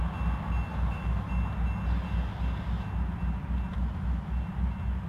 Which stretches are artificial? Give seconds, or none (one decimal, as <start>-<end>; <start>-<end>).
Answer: 0.7-1.3; 3.7-4.3